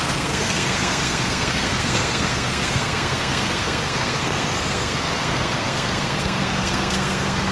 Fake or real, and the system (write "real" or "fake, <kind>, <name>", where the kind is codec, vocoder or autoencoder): fake, codec, SNAC